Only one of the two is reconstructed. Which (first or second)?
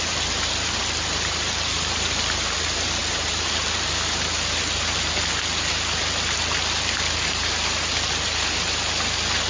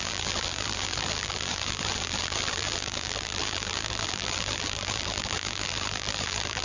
second